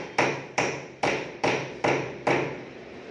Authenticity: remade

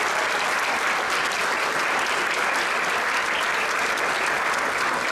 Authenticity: recorded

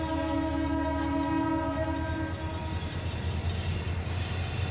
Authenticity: recorded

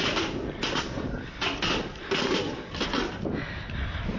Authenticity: recorded